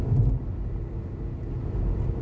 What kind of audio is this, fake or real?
real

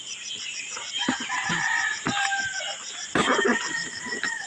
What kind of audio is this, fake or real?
fake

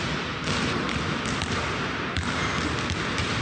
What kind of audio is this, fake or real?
real